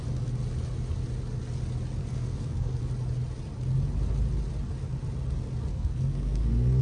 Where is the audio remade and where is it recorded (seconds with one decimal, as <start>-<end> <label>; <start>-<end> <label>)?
0.0-2.0 recorded; 2.0-2.8 remade; 2.8-5.7 recorded; 5.7-6.8 remade